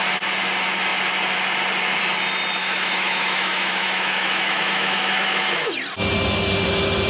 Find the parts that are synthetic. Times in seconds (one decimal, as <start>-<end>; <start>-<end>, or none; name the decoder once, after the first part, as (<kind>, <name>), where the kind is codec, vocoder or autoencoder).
2.6-5.7 (autoencoder, DAC-VAE)

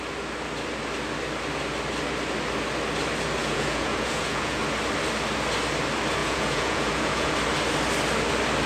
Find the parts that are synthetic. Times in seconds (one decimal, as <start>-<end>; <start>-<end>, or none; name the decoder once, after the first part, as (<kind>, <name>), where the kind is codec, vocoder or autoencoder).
3.4-4.6 (vocoder, Vocos); 6.2-7.3

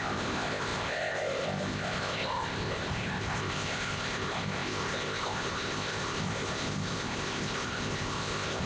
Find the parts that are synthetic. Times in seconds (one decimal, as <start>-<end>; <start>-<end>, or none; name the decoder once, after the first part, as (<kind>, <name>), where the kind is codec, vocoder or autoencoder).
0.0-8.7 (codec, ZipCodec)